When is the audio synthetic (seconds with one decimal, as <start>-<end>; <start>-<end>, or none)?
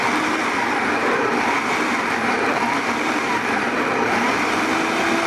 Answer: none